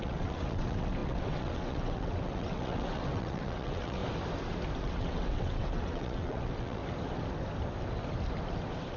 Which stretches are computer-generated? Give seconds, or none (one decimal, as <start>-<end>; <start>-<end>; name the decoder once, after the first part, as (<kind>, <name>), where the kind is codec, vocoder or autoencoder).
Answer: 0.0-4.0 (vocoder, WaveNeXt); 4.8-6.8